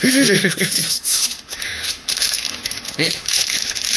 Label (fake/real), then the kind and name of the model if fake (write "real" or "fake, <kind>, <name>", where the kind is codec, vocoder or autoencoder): fake, autoencoder, DAC-VAE